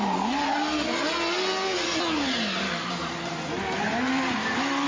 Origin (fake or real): real